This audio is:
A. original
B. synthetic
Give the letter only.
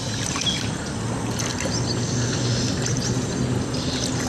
A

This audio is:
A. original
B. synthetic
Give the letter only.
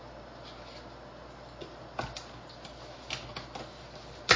A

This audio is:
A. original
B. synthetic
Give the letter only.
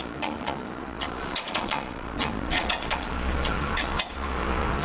B